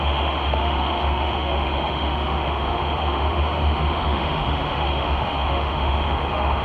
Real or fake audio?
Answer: fake